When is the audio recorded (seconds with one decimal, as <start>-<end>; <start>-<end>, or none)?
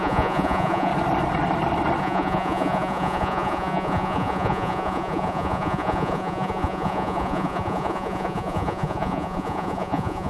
0.9-2.0